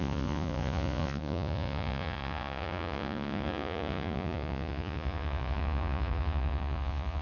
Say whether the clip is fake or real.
fake